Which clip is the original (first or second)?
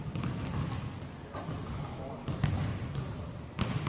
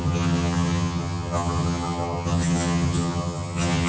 first